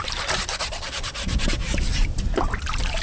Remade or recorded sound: remade